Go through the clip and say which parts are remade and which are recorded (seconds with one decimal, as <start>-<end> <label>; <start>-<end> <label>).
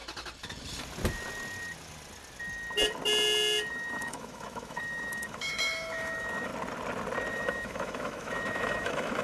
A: 0.0-3.7 recorded; 3.7-6.5 remade; 6.5-7.3 recorded; 7.3-9.2 remade